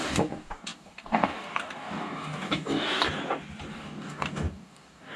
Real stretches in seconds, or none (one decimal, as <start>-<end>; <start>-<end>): 3.0-3.7